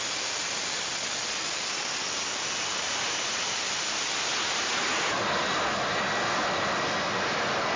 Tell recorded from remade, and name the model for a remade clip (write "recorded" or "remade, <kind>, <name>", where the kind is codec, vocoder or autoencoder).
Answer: recorded